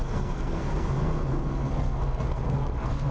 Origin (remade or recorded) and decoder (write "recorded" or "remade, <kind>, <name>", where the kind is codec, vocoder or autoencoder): remade, codec, SNAC